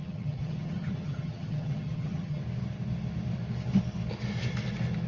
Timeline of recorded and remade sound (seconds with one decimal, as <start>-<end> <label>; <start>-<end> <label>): 0.0-2.4 remade; 2.4-5.1 recorded